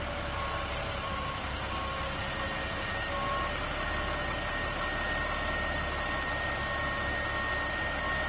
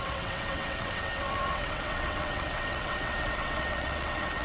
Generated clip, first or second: second